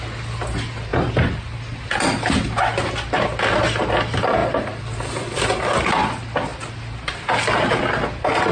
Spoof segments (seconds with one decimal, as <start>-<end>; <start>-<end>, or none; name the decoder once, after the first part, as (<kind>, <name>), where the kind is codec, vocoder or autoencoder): 4.4-5.6 (vocoder, BigVGAN v2)